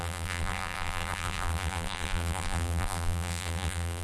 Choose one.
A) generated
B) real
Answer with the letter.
A